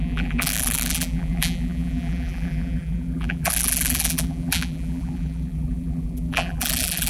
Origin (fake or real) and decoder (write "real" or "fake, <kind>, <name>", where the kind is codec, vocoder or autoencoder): fake, vocoder, BigVGAN v2